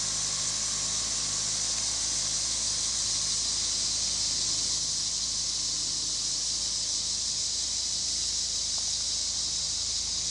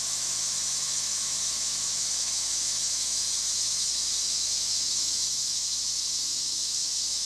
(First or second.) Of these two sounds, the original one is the first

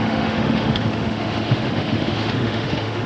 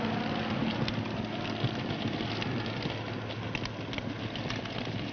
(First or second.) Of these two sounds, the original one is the second